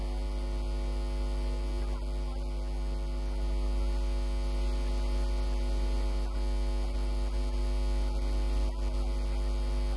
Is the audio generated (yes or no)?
no